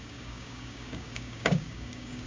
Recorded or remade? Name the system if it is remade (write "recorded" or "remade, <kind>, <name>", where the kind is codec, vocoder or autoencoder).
remade, codec, DAC